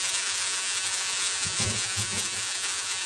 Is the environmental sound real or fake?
fake